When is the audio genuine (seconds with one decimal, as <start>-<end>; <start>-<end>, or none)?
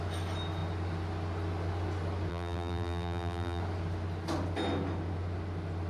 0.0-2.3; 3.6-5.9